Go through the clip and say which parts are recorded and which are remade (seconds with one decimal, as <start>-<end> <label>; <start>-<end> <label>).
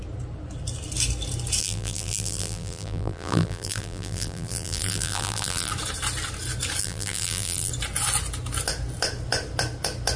0.0-1.6 recorded; 1.6-5.7 remade; 5.7-6.8 recorded; 6.8-7.7 remade; 7.7-10.2 recorded